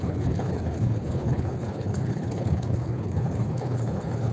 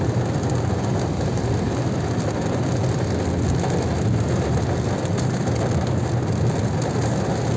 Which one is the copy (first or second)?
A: first